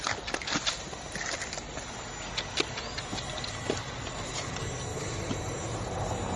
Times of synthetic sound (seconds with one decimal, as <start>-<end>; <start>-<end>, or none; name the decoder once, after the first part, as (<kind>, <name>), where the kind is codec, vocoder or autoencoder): 4.9-5.6 (vocoder, BigVGAN v2)